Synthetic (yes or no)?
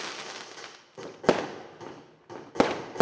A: no